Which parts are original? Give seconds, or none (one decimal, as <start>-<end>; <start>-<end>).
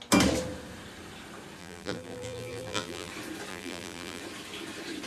0.0-1.6; 3.1-3.5; 4.2-5.1